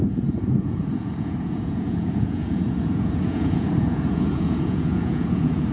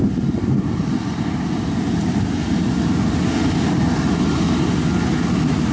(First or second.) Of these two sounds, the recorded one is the second